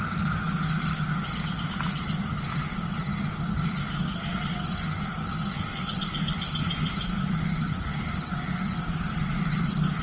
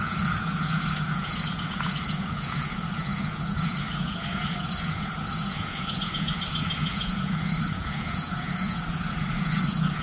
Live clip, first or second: first